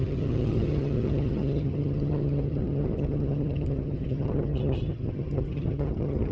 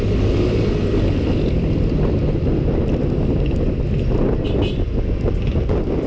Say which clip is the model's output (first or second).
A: first